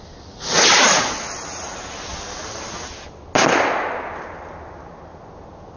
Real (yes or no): yes